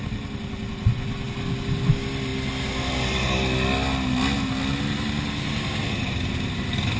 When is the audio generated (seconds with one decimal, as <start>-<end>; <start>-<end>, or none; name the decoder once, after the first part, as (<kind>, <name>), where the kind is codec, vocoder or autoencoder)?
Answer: none